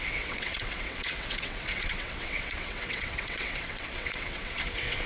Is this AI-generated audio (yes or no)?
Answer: yes